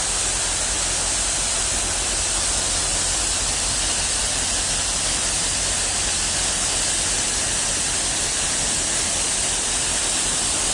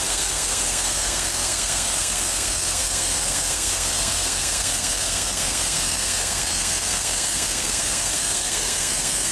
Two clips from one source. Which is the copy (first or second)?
second